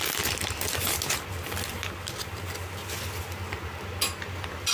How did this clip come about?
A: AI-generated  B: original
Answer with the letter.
B